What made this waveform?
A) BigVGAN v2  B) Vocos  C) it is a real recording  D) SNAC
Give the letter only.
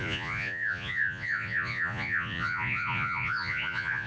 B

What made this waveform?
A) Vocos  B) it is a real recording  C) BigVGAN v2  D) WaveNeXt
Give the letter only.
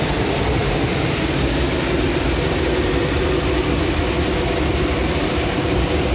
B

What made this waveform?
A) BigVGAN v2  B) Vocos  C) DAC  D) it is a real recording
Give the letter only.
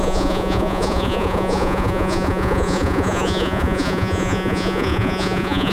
B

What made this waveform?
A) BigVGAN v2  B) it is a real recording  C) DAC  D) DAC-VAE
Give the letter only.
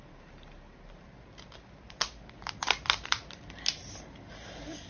B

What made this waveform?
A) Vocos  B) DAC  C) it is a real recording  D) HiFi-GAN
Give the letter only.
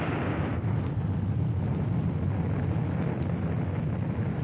C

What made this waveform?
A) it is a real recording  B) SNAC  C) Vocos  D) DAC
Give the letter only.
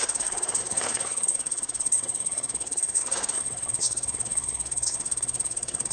B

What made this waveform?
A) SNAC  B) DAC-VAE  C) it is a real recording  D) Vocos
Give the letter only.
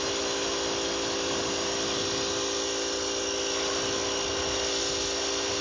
C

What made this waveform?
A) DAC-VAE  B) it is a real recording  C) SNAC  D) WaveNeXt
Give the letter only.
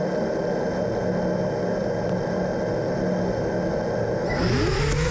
B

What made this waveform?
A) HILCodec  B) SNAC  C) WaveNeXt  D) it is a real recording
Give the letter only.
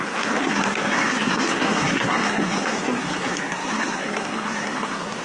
B